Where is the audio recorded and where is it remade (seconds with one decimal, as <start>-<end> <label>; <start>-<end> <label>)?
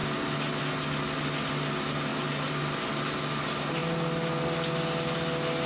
0.0-5.7 recorded